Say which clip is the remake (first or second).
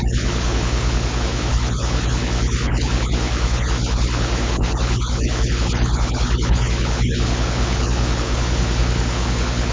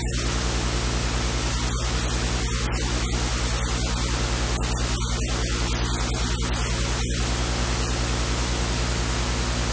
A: first